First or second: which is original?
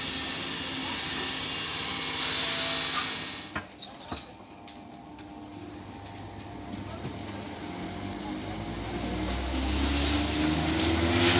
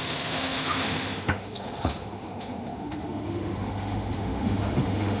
first